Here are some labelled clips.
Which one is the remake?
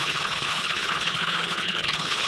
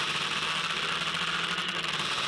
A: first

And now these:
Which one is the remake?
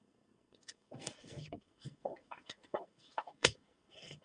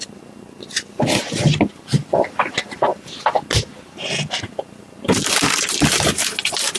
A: first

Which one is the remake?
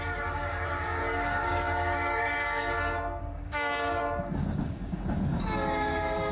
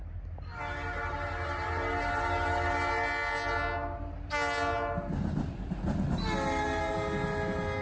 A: first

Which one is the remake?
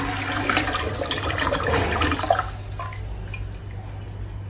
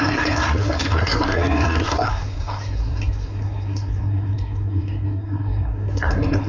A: second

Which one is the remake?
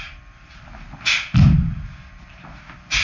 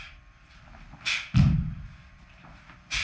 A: second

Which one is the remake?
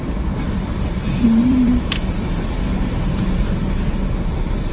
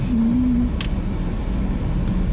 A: first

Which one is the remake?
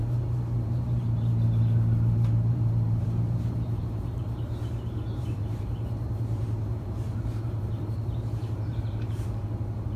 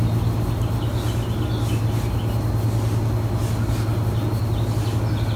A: first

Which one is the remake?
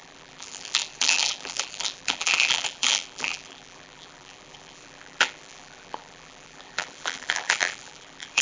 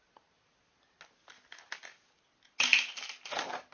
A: first